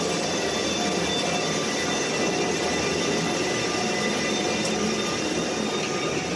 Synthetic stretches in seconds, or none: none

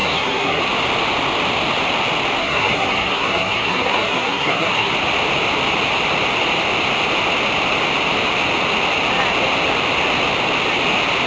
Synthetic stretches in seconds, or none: 0.0-0.6; 2.4-4.9

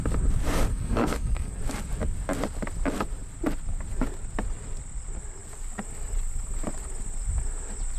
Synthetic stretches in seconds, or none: 0.7-1.6

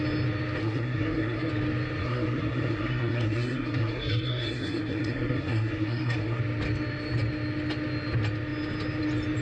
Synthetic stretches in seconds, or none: 0.6-1.5; 2.0-6.4